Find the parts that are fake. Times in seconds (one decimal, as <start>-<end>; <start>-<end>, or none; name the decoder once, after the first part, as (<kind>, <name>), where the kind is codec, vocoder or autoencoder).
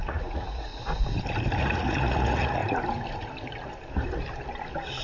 0.0-0.7 (vocoder, Vocos); 1.6-2.6